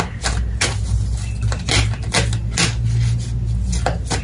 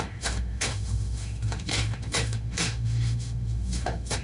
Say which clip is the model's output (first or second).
second